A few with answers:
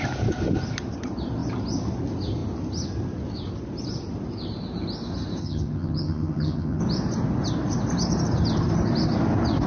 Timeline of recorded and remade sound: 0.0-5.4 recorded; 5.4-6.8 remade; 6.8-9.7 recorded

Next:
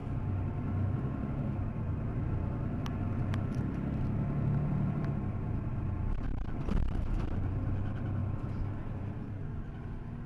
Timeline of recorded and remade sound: 0.0-8.2 recorded; 8.2-9.3 remade; 9.3-10.3 recorded

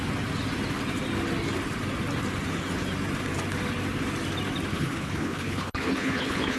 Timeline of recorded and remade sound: 0.0-4.7 recorded; 4.7-6.6 remade

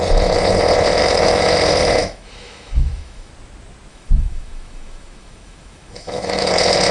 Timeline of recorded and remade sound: 0.0-1.0 recorded; 1.0-1.5 remade; 1.5-2.0 recorded; 2.0-3.3 remade; 3.3-3.9 recorded; 3.9-6.5 remade; 6.5-6.9 recorded

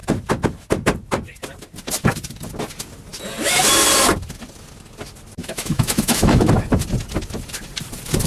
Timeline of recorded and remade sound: 0.0-5.4 recorded; 5.4-6.5 remade; 6.5-8.3 recorded

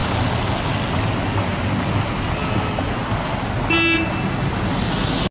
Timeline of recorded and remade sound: 0.0-5.3 recorded